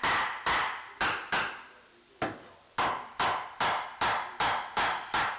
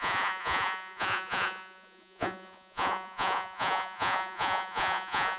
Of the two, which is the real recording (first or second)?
first